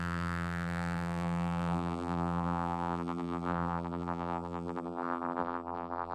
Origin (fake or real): fake